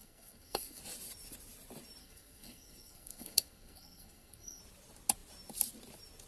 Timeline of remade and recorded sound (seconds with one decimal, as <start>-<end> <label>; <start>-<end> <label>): 0.0-0.8 remade; 0.8-2.0 recorded; 2.0-4.6 remade; 4.6-6.3 recorded